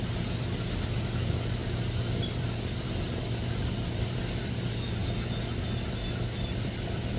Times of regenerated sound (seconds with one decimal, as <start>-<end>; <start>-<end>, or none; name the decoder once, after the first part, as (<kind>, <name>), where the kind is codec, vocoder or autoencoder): 3.4-4.2 (vocoder, BigVGAN v2)